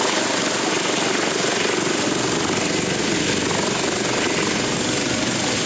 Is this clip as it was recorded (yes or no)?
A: yes